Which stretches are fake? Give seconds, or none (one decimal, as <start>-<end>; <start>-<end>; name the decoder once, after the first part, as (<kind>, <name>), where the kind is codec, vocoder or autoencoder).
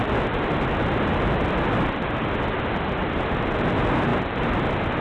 none